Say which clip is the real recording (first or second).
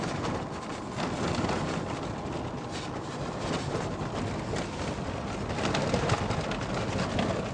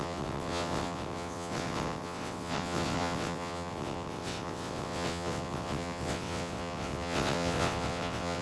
first